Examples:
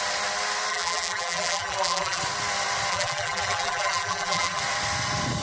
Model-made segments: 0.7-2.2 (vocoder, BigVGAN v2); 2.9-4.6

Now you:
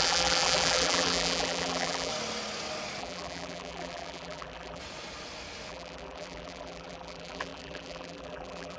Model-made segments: 0.0-2.1 (vocoder, BigVGAN v2); 3.0-4.8; 5.7-8.8